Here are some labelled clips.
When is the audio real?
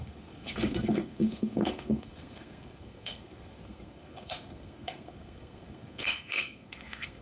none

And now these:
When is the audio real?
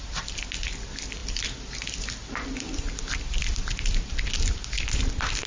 0.0-5.5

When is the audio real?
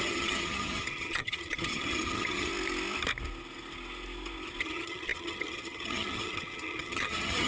2.5-4.6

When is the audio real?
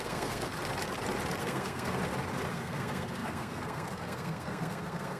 0.5-1.4; 2.0-2.5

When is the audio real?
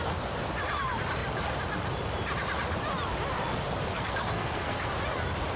0.0-3.9; 4.9-5.6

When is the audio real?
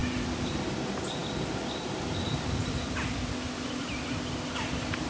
0.0-0.7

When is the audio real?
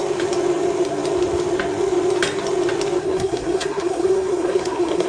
0.0-3.0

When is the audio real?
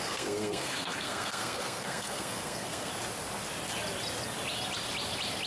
2.9-5.5